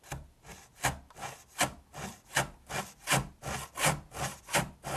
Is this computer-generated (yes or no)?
no